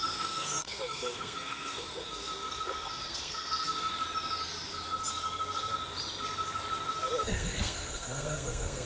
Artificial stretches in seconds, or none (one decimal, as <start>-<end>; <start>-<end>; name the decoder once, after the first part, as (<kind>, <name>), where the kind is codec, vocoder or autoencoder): 0.0-3.9 (codec, SNAC); 5.1-5.7; 7.2-8.9